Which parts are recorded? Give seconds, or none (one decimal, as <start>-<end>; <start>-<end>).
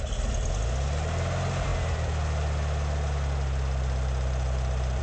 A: 0.0-5.0